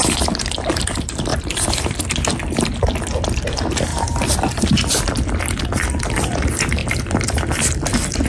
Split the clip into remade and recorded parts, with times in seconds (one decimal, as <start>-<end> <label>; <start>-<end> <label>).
0.0-8.3 recorded